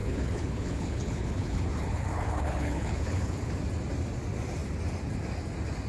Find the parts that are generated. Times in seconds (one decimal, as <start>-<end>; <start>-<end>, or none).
0.0-3.5